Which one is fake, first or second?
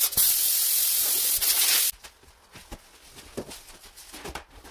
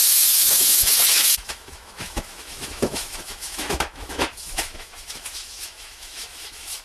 second